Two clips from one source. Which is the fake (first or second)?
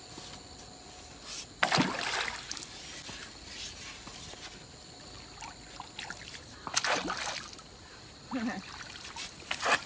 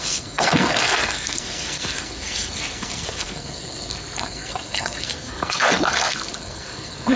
second